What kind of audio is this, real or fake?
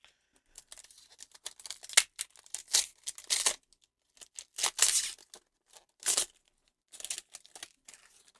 real